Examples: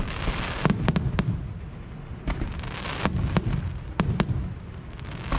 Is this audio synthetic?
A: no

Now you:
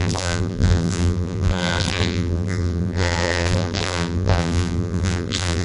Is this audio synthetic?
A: yes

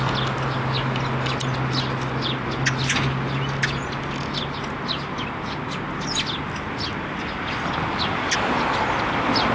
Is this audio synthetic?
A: no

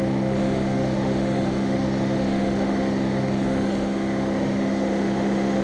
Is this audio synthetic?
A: yes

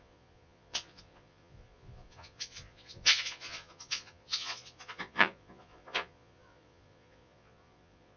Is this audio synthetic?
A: yes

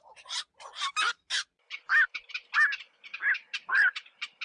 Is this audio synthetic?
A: no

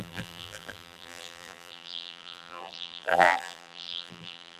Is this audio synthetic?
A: yes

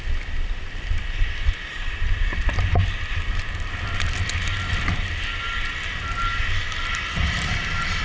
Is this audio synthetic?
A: no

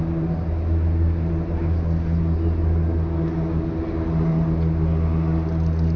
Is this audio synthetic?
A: no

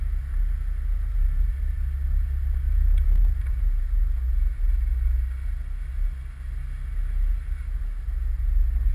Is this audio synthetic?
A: no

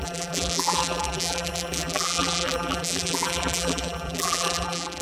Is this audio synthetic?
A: yes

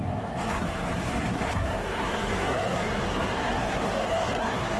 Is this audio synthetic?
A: yes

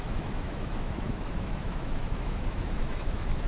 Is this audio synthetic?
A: yes